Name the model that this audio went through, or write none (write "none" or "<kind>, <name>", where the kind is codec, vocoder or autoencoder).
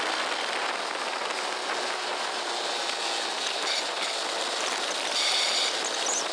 none